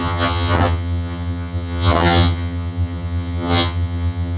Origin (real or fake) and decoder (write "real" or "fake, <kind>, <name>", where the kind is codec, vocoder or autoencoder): fake, vocoder, HiFi-GAN